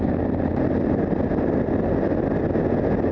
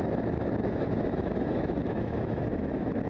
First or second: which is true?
first